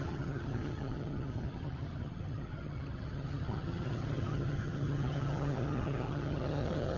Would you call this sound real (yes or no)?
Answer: no